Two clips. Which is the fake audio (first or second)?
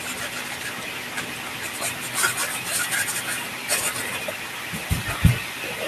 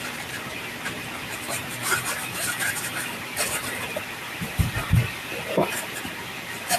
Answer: second